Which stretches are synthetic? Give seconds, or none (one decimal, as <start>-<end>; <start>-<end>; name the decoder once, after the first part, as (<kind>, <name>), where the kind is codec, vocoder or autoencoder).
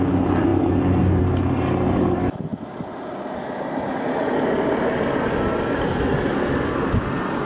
none